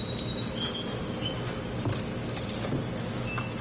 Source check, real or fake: real